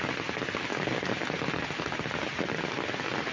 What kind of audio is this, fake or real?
real